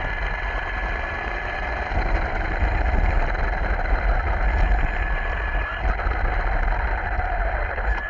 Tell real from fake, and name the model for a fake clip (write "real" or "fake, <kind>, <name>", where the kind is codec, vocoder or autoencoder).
real